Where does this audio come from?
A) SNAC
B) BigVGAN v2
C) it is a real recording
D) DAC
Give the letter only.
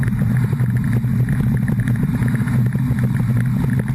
C